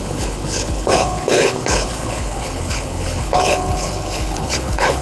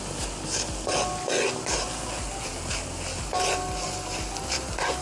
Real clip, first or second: second